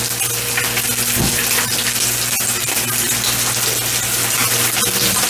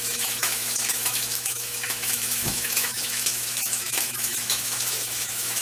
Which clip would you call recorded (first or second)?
first